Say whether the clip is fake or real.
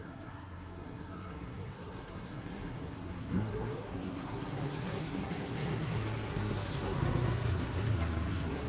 fake